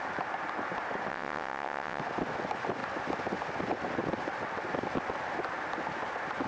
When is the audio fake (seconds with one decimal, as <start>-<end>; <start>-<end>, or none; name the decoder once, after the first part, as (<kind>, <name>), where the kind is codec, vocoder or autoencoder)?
1.1-2.0 (vocoder, WaveNeXt)